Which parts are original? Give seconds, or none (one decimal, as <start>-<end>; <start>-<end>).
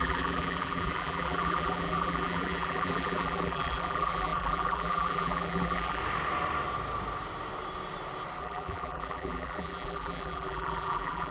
6.0-8.4